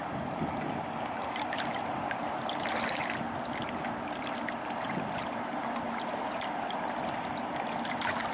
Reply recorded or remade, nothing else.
recorded